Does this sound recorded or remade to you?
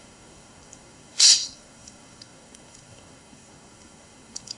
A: remade